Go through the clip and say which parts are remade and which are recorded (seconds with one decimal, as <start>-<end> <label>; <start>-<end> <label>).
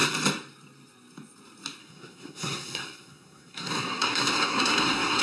0.0-1.8 recorded; 1.8-5.2 remade